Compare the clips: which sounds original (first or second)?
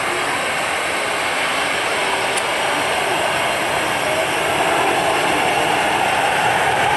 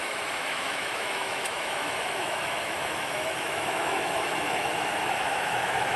first